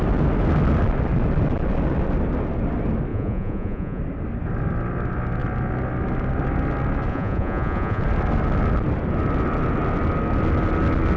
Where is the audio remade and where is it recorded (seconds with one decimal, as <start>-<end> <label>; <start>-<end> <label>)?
0.0-3.1 recorded; 3.1-4.0 remade; 4.0-7.1 recorded; 7.1-8.0 remade; 8.0-11.2 recorded